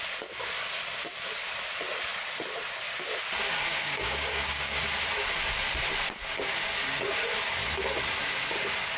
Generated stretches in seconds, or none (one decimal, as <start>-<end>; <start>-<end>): 3.7-4.8